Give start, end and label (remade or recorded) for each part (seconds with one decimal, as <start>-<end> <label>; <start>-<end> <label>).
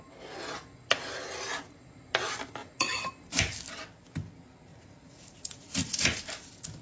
0.0-2.6 recorded; 2.6-3.1 remade; 3.1-4.7 recorded; 4.7-6.2 remade; 6.2-6.8 recorded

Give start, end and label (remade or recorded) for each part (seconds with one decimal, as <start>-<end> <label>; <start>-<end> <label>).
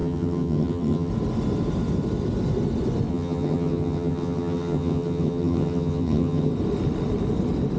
0.0-1.1 remade; 1.1-3.1 recorded; 3.1-6.5 remade; 6.5-7.8 recorded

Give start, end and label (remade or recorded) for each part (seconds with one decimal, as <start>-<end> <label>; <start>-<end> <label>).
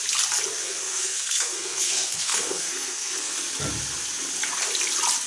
0.0-0.6 recorded; 0.6-3.4 remade; 3.4-5.3 recorded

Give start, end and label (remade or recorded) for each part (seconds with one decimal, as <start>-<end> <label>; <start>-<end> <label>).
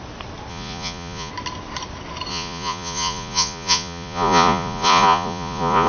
0.0-0.5 recorded; 0.5-1.3 remade; 1.3-2.3 recorded; 2.3-5.9 remade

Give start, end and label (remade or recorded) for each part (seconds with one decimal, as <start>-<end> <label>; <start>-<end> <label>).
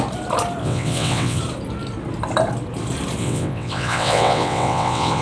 0.0-0.6 recorded; 0.6-1.4 remade; 1.4-3.2 recorded; 3.2-5.2 remade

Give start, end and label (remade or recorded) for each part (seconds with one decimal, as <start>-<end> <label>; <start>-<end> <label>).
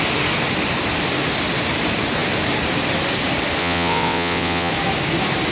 0.0-3.6 recorded; 3.6-4.7 remade; 4.7-5.5 recorded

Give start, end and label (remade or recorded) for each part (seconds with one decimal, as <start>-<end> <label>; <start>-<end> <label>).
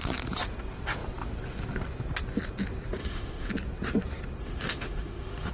0.0-3.0 recorded; 3.0-3.5 remade; 3.5-4.4 recorded; 4.4-5.5 remade